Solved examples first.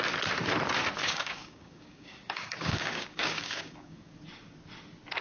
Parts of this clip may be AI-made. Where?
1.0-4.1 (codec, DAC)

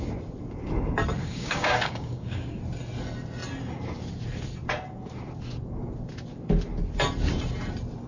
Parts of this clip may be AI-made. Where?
1.2-2.6 (codec, DAC)

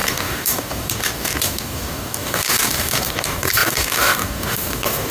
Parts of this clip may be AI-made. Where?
0.0-5.1 (codec, DAC)